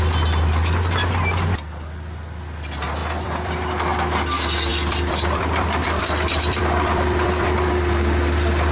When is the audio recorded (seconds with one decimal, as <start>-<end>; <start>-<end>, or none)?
0.0-3.0; 3.5-4.7; 7.7-8.7